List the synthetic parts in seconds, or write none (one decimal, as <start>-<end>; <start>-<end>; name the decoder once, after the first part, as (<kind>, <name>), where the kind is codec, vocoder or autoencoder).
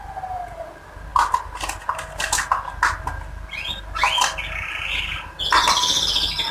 none